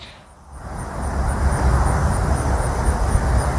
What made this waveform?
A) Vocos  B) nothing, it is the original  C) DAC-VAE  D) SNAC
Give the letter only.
B